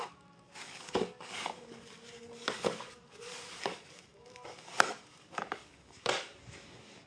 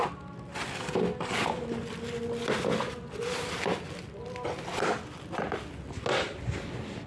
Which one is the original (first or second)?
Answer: second